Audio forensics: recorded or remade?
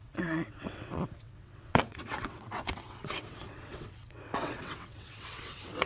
remade